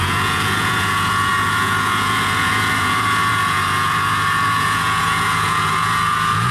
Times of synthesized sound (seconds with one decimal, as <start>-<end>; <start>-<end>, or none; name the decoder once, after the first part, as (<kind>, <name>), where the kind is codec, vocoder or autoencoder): 0.0-6.5 (vocoder, Vocos)